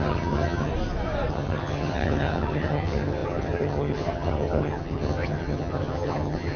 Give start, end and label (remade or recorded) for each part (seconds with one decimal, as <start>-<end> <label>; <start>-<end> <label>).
0.0-0.7 remade; 0.7-1.3 recorded; 1.3-6.6 remade